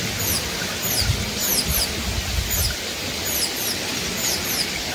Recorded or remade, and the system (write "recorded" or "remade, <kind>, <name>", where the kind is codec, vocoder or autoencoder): recorded